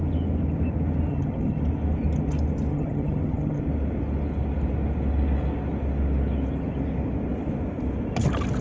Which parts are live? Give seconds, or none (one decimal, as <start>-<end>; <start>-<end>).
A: 0.0-1.1; 1.6-2.7; 3.6-8.6